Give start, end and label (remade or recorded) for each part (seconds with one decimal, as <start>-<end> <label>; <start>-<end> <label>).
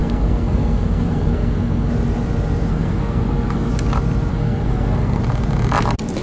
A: 0.0-1.9 remade; 1.9-2.7 recorded; 2.7-3.7 remade; 3.7-4.3 recorded; 4.3-5.2 remade; 5.2-6.2 recorded